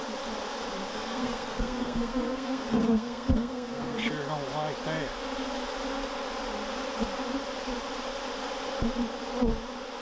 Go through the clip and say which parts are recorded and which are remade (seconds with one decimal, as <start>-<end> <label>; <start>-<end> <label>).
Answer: 0.0-0.9 recorded; 0.9-4.1 remade; 4.1-10.0 recorded